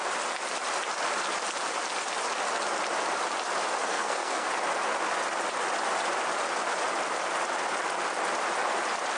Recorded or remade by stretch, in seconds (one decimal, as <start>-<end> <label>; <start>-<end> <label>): 0.0-3.8 recorded; 3.8-4.5 remade; 4.5-9.2 recorded